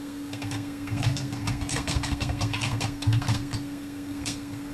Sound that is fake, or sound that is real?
fake